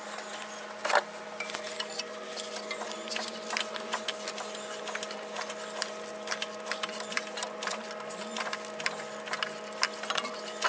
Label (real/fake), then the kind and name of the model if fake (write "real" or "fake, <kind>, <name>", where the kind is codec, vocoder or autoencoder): real